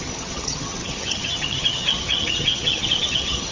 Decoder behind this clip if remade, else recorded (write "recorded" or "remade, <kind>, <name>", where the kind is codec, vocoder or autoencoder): remade, vocoder, HiFi-GAN